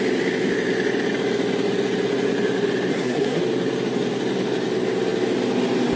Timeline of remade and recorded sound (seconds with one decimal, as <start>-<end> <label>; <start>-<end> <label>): 0.0-2.9 recorded; 2.9-3.4 remade; 3.4-6.0 recorded